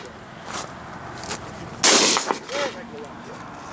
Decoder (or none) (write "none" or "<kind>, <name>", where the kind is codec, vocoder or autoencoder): none